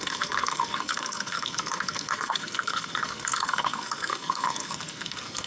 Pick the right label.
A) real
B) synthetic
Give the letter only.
B